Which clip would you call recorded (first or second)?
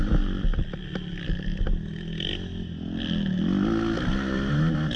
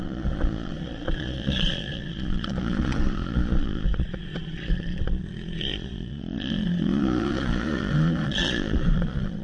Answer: first